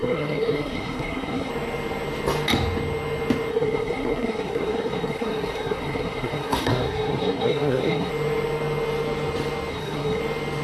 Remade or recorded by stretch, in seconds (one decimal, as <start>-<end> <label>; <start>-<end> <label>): 0.0-1.5 remade; 1.5-3.5 recorded; 3.5-8.1 remade; 8.1-9.7 recorded; 9.7-10.2 remade; 10.2-10.6 recorded